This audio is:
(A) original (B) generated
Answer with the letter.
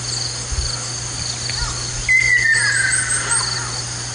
A